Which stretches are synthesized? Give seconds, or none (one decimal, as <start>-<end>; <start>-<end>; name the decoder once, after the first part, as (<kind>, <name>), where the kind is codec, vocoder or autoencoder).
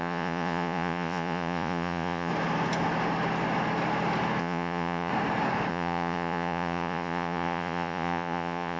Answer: 0.0-2.3 (vocoder, Vocos); 4.4-5.1; 5.7-8.8